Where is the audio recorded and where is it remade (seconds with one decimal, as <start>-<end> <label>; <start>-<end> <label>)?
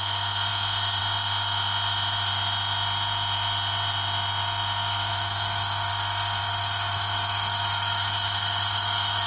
0.0-5.1 recorded; 5.1-5.9 remade; 5.9-6.4 recorded; 6.4-9.3 remade